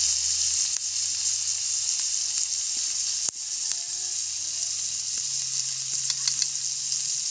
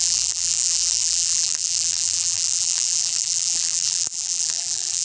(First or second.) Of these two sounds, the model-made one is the second